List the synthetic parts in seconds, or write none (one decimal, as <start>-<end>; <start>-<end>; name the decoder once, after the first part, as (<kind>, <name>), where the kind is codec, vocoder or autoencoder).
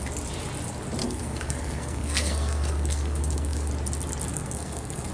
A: 1.0-3.7 (codec, SNAC); 4.3-5.1